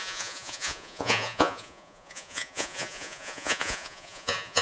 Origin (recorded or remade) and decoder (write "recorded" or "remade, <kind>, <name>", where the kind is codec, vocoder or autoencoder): remade, vocoder, Vocos